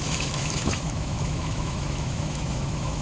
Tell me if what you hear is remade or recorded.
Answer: remade